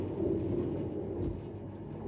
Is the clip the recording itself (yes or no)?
yes